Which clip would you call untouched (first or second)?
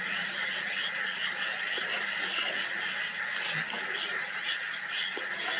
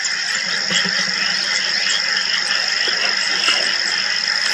second